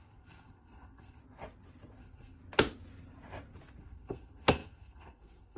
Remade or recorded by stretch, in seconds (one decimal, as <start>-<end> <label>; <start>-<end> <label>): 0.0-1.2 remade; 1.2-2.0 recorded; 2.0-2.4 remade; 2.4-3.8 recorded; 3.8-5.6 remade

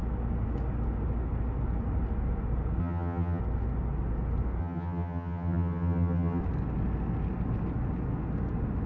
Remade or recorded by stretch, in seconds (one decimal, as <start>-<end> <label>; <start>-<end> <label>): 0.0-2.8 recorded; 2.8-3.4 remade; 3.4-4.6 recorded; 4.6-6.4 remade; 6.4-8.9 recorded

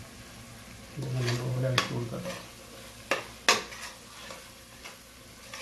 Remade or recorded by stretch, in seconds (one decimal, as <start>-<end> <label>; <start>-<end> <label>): 0.0-5.6 recorded

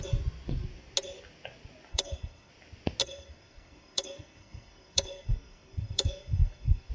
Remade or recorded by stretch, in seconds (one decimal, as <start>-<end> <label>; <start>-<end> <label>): 0.0-1.9 recorded; 1.9-2.5 remade; 2.5-3.0 recorded; 3.0-6.9 remade

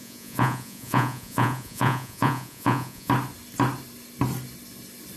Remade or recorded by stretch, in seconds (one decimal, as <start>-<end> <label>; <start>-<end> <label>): 0.0-3.1 remade; 3.1-5.2 recorded